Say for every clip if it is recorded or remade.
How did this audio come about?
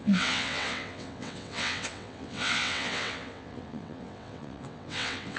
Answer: remade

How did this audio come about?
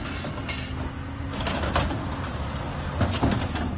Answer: recorded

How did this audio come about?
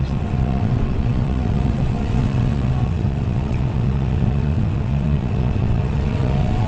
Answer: remade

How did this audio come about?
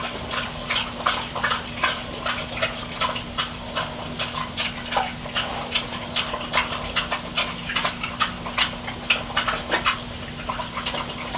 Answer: recorded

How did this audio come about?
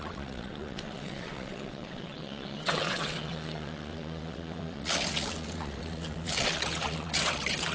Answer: remade